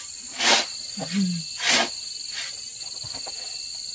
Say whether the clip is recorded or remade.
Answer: recorded